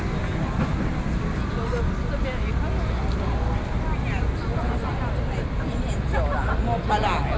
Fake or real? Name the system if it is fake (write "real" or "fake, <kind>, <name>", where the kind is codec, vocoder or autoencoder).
real